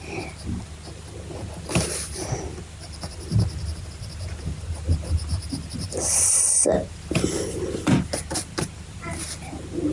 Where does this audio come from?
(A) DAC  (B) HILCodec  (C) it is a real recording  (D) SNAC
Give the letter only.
C